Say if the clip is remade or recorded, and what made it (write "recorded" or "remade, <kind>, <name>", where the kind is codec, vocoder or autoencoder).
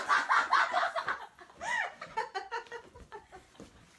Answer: remade, vocoder, Vocos